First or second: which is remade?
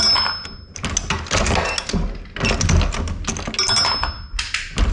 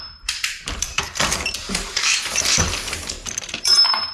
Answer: second